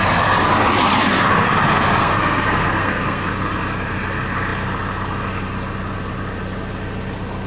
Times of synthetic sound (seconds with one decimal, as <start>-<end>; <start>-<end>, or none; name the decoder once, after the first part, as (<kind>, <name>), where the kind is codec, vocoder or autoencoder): 2.0-3.3 (codec, SNAC)